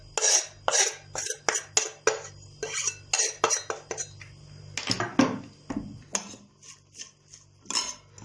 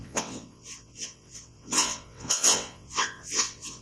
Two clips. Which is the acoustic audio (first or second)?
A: first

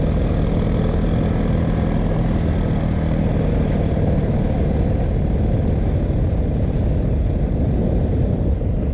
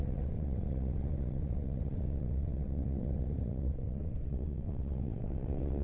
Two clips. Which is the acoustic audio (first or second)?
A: first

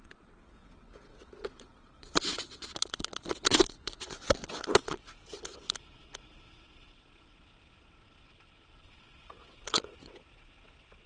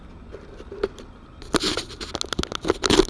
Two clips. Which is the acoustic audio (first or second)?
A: second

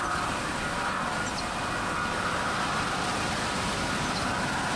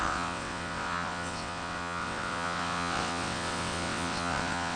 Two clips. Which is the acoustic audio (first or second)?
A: first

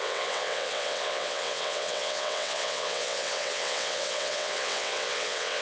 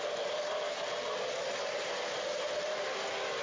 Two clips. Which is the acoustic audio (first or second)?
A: second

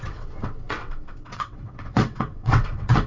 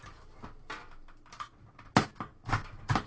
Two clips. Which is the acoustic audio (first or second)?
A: second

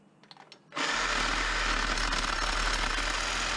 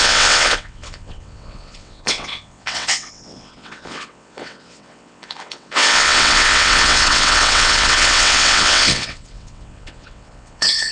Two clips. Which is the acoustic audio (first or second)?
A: first